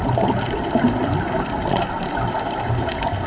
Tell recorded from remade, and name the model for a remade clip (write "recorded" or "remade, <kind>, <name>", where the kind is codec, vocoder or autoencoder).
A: recorded